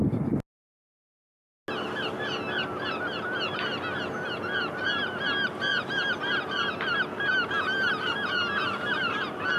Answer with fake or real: real